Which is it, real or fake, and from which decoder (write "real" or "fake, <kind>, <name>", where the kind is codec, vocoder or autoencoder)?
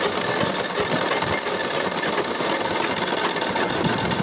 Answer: real